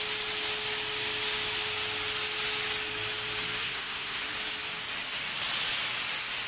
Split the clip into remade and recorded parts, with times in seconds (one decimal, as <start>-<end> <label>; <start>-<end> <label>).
0.0-3.6 recorded; 3.6-4.2 remade; 4.2-6.5 recorded